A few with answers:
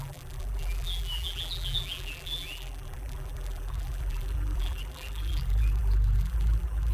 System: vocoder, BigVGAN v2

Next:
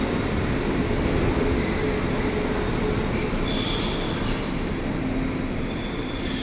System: none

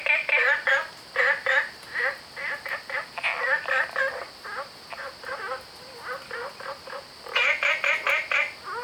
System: none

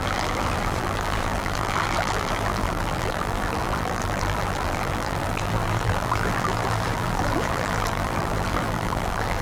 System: vocoder, BigVGAN v2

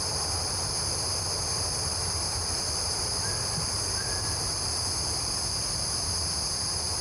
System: none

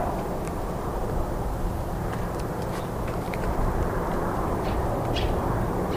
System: vocoder, BigVGAN v2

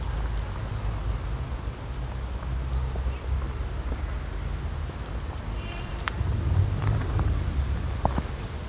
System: none